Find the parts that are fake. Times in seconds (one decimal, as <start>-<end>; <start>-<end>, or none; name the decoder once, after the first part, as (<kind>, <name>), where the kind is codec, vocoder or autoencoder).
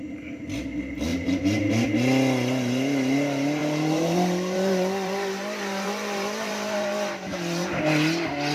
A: 1.1-1.9 (vocoder, BigVGAN v2); 3.6-7.8